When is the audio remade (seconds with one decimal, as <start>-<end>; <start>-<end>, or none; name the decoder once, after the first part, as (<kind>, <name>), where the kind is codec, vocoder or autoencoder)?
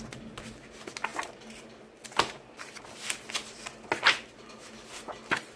none